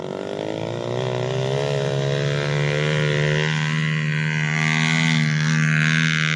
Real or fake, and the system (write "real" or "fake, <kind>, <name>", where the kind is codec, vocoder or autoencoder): real